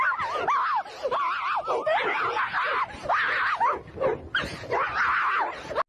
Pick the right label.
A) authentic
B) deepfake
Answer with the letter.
A